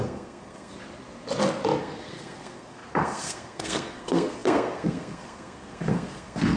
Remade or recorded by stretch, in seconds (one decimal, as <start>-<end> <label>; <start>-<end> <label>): 0.0-0.7 remade; 0.7-1.8 recorded; 1.8-6.6 remade